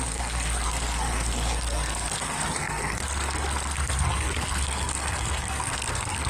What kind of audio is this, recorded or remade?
remade